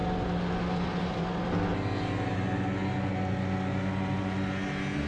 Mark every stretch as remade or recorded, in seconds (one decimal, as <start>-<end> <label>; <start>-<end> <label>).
0.0-5.1 recorded